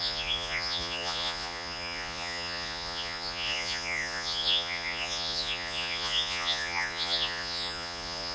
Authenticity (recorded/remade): remade